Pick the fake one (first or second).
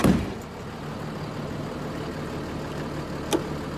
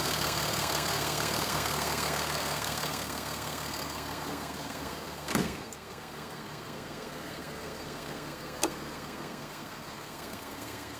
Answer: second